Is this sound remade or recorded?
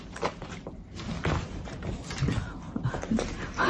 recorded